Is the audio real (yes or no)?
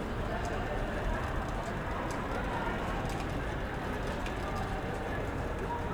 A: yes